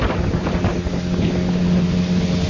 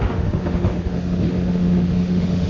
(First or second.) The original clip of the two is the first